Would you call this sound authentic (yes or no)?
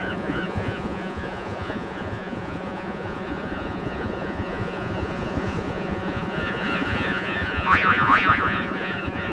no